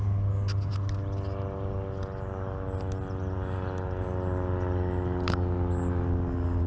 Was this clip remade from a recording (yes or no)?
no